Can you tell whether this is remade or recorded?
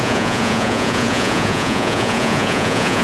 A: remade